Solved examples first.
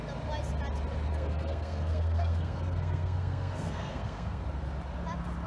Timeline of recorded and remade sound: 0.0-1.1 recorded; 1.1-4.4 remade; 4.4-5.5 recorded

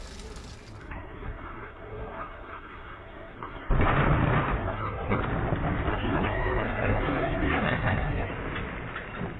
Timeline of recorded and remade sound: 0.0-0.8 recorded; 0.8-3.7 remade; 3.7-4.6 recorded; 4.6-5.2 remade; 5.2-5.9 recorded; 5.9-8.3 remade; 8.3-9.4 recorded

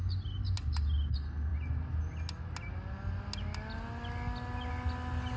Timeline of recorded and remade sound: 0.0-5.4 recorded

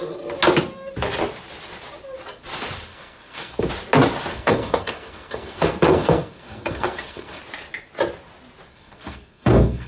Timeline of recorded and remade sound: 0.0-2.9 recorded; 2.9-3.7 remade; 3.7-4.3 recorded; 4.3-7.4 remade; 7.4-8.7 recorded; 8.7-9.9 remade

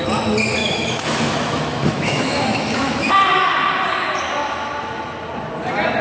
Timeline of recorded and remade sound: 0.0-0.6 recorded; 0.6-3.1 remade; 3.1-6.0 recorded